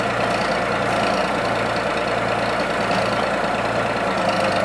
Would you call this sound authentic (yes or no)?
yes